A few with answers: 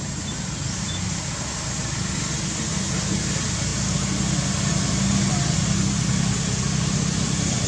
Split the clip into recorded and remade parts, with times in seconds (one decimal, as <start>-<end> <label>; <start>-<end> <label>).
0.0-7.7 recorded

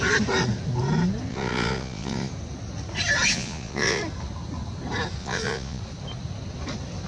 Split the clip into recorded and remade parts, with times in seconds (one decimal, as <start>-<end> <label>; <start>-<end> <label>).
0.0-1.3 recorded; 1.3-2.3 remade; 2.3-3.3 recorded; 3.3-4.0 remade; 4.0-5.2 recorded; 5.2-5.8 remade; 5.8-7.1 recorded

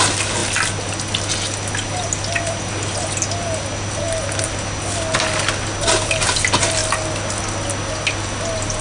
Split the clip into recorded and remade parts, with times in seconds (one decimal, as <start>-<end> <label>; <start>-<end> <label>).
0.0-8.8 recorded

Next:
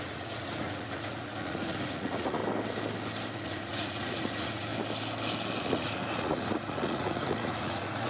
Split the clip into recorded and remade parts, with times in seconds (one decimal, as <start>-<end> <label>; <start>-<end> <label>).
0.0-2.4 remade; 2.4-3.3 recorded; 3.3-4.7 remade; 4.7-5.6 recorded; 5.6-8.1 remade